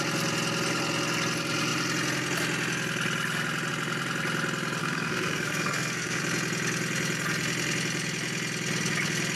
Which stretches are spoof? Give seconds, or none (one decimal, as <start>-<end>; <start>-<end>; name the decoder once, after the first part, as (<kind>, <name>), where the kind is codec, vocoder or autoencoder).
4.8-6.2 (codec, SNAC)